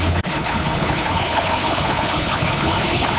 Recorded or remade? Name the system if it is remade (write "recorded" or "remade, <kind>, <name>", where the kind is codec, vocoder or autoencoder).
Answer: remade, codec, HILCodec